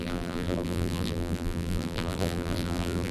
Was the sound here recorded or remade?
remade